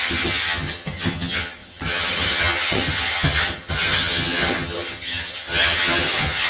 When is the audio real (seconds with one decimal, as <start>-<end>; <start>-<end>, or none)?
none